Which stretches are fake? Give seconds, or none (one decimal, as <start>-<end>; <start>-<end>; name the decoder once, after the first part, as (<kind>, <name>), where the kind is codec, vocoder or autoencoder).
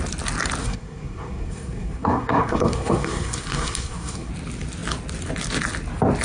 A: 0.6-4.3 (codec, SNAC)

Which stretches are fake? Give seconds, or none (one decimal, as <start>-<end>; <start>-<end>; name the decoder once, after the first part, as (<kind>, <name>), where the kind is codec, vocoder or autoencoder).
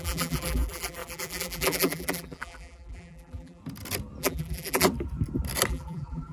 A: 0.0-3.6 (vocoder, BigVGAN v2); 4.2-4.9; 5.7-6.3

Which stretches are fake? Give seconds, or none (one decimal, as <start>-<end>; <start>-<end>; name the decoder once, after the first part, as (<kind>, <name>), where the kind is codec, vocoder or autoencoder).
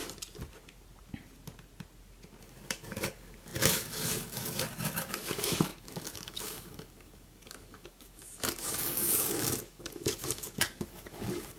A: 2.4-11.6 (codec, DAC)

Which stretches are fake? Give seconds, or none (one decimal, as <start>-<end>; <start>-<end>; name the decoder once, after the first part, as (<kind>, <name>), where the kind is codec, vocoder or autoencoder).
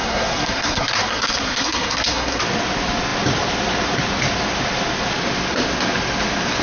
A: 0.0-2.4 (codec, SNAC)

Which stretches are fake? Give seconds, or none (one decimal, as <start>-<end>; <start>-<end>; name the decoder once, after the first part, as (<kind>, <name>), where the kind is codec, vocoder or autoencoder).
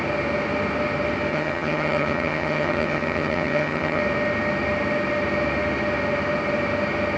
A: 1.3-4.0 (vocoder, HiFi-GAN)